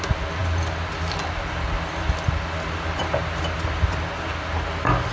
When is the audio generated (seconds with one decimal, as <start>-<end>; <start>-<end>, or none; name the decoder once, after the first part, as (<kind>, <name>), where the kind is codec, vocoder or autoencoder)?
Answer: none